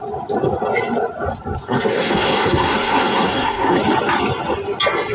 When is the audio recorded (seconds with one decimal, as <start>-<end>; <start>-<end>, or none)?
0.0-1.6; 3.8-5.1